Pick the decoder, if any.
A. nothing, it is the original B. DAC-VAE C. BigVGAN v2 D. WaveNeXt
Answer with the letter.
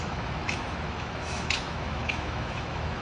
B